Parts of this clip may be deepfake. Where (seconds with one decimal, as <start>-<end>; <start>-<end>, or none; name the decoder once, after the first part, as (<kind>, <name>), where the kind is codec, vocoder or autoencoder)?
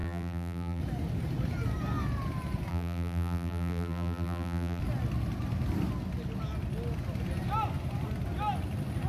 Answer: 0.0-0.8 (vocoder, BigVGAN v2); 2.7-4.8